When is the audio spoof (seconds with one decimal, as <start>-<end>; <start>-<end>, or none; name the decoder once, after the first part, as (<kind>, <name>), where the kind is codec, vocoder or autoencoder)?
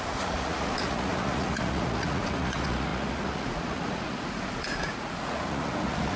0.0-6.2 (vocoder, Vocos)